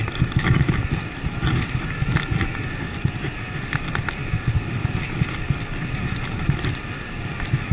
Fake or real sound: real